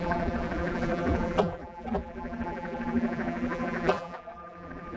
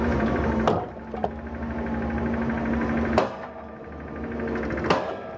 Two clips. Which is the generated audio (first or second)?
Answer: first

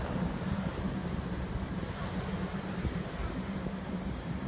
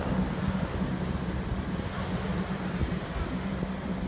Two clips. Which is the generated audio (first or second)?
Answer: first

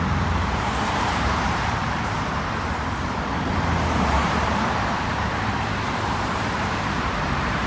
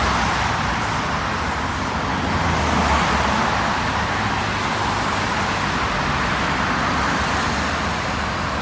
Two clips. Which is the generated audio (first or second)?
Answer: first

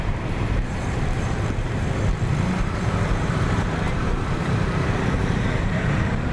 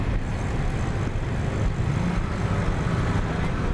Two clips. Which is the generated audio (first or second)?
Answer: first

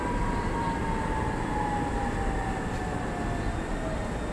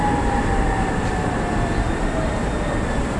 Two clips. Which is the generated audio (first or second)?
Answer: second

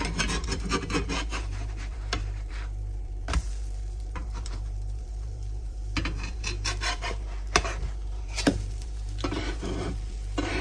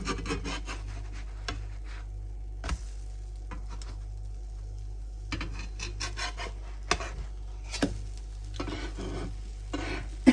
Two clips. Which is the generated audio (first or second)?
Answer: first